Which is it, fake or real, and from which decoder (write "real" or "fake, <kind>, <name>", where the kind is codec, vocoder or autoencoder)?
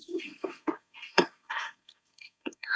fake, codec, SNAC